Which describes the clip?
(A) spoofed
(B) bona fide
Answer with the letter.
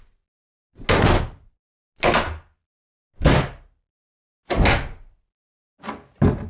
B